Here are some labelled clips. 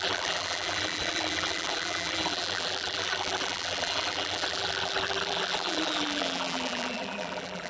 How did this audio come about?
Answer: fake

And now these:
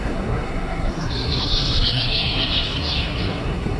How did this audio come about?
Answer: fake